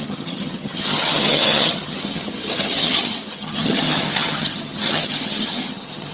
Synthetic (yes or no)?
yes